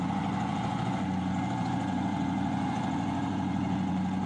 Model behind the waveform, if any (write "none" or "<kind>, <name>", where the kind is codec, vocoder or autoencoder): vocoder, Vocos